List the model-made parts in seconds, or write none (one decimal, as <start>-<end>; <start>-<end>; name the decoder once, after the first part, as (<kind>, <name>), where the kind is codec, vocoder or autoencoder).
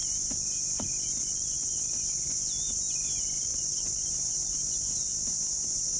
2.6-3.5 (vocoder, BigVGAN v2); 4.1-6.0